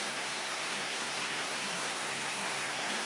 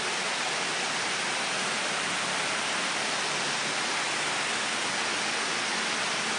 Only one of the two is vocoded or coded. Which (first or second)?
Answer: first